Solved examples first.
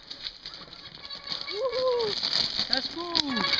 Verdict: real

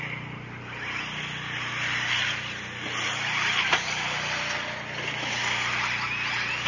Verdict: real